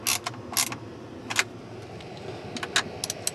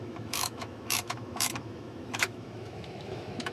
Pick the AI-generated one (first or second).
second